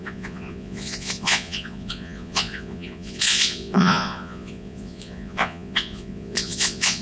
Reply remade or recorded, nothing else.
remade